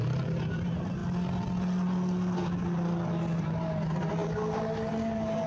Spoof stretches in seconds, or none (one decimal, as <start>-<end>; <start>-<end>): 0.0-1.0; 3.4-5.5